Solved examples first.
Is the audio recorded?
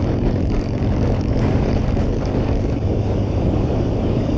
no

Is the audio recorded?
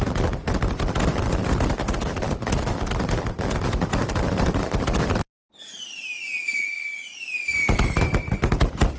yes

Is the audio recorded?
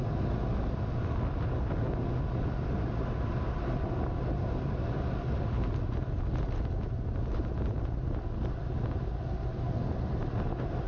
yes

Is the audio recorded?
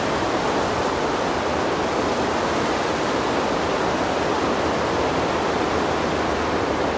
yes